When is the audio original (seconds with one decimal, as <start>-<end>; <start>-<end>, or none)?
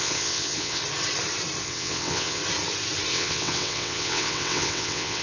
0.8-1.6; 2.4-3.1